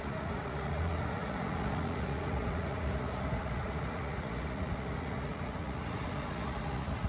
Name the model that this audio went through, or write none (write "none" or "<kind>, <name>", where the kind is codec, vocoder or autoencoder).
vocoder, Vocos